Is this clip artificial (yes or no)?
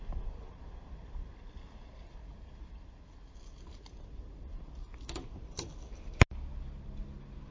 no